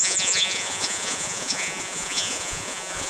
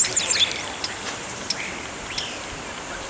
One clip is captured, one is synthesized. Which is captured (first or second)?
second